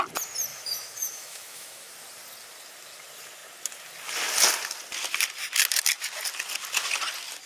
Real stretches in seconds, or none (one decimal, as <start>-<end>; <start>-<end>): 0.0-0.5; 1.9-7.5